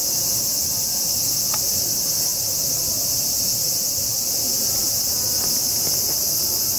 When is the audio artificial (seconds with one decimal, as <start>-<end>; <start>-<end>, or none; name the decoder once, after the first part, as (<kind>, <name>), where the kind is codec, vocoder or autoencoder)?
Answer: none